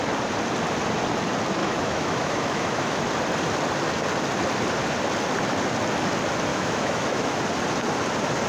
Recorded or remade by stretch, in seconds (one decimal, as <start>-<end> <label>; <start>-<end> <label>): 0.0-1.6 recorded; 1.6-3.0 remade; 3.0-6.5 recorded; 6.5-7.4 remade; 7.4-8.5 recorded

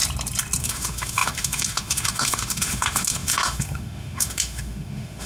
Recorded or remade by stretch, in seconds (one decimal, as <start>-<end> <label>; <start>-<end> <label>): 0.0-0.6 recorded; 0.6-5.3 remade

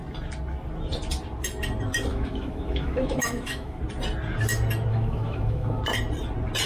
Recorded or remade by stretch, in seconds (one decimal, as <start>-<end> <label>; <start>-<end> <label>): 0.0-2.1 recorded; 2.1-3.8 remade; 3.8-4.9 recorded; 4.9-5.8 remade; 5.8-6.7 recorded

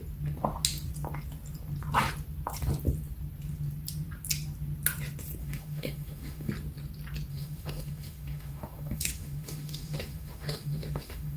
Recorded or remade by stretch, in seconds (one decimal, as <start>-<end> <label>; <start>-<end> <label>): 0.0-5.4 recorded; 5.4-6.5 remade; 6.5-7.3 recorded; 7.3-11.4 remade

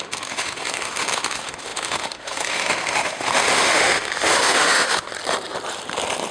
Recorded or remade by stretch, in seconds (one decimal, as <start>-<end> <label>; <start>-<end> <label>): 0.0-5.1 remade; 5.1-6.3 recorded

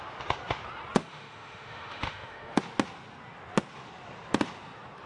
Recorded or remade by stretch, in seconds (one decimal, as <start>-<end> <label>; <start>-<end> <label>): 0.0-1.0 recorded; 1.0-2.6 remade; 2.6-5.1 recorded

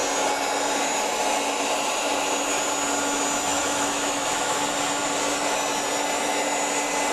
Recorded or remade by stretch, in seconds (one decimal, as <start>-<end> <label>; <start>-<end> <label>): 0.0-3.5 recorded; 3.5-4.6 remade; 4.6-7.1 recorded

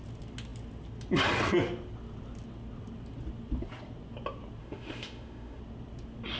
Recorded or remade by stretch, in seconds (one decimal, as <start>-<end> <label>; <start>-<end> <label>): 0.0-4.6 recorded; 4.6-5.6 remade; 5.6-6.4 recorded